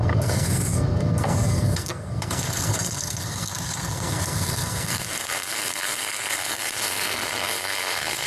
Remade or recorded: remade